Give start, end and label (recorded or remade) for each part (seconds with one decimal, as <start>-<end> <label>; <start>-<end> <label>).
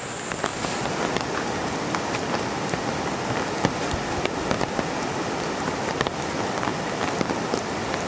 0.0-8.1 recorded